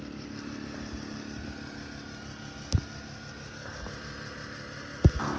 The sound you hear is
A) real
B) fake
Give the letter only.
A